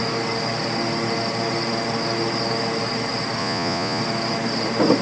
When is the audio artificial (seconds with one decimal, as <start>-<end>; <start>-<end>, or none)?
3.4-4.0